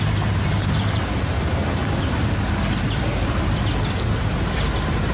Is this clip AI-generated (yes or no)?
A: no